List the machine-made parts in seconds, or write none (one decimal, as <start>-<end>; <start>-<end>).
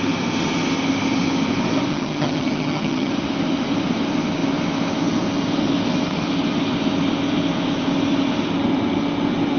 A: 1.9-3.1